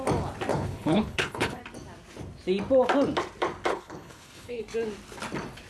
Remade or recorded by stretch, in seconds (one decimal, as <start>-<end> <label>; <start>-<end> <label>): 0.0-0.5 recorded; 0.5-1.6 remade; 1.6-3.7 recorded; 3.7-4.6 remade; 4.6-5.7 recorded